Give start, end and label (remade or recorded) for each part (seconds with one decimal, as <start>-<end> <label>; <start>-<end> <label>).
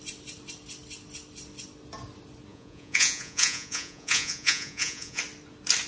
0.0-2.5 recorded; 2.5-5.2 remade; 5.2-5.9 recorded